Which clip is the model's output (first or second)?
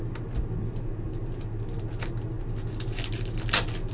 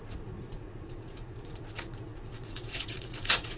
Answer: second